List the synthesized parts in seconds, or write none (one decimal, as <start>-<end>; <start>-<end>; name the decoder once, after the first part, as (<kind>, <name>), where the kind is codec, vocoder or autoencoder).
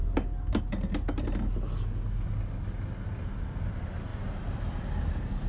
none